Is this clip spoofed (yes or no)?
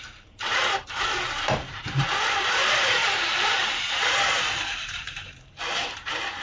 yes